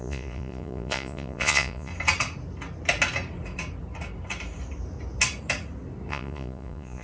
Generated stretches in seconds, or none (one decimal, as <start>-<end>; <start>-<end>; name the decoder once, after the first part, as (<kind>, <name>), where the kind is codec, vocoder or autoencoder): 0.0-1.9 (vocoder, Vocos); 6.1-7.0